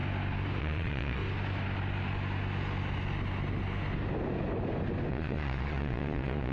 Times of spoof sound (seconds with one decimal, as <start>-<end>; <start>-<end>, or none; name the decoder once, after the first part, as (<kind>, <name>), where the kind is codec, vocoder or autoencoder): 0.6-1.2 (vocoder, Vocos); 5.1-6.5